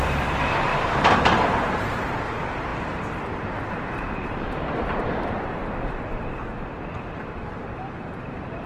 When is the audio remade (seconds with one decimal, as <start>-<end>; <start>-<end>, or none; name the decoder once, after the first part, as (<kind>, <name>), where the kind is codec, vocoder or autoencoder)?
0.0-2.7 (vocoder, BigVGAN v2); 3.7-5.6; 7.1-8.7